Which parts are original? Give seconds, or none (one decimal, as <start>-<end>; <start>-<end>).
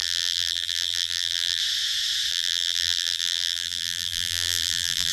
1.6-2.3